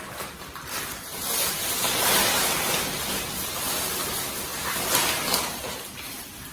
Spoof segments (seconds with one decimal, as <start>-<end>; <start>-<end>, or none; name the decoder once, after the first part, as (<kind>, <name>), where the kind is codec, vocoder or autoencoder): 1.1-3.7 (vocoder, BigVGAN v2)